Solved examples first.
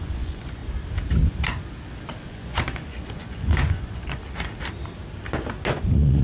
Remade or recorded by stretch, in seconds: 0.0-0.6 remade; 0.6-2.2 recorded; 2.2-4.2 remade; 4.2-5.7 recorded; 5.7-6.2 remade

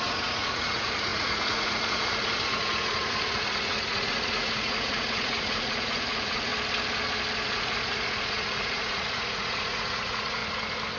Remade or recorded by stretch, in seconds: 0.0-6.5 remade; 6.5-7.5 recorded; 7.5-10.4 remade; 10.4-11.0 recorded

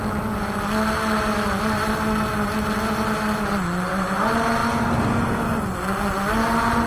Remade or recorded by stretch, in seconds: 0.0-6.9 recorded

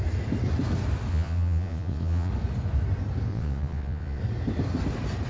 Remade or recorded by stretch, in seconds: 0.0-1.1 recorded; 1.1-2.3 remade; 2.3-3.3 recorded; 3.3-4.2 remade; 4.2-5.3 recorded

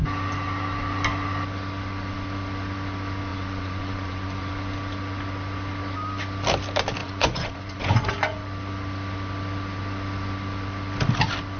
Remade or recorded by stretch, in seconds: 0.0-3.3 recorded; 3.3-4.5 remade; 4.5-7.0 recorded; 7.0-8.1 remade; 8.1-11.6 recorded